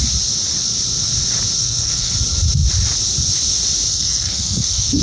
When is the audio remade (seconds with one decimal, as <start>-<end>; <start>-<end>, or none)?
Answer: 1.6-2.1; 3.9-5.0